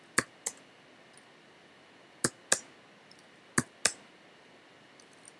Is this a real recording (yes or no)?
yes